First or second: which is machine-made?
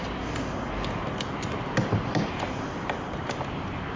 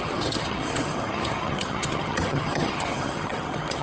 second